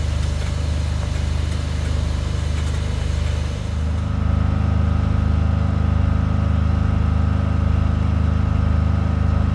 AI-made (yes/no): no